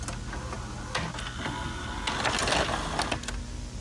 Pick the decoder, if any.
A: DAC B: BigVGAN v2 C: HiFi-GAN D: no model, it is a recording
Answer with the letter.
D